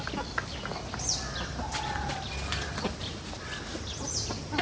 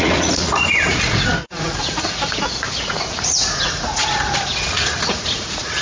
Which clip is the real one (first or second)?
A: first